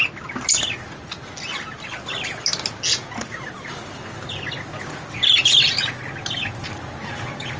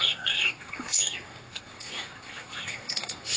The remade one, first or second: second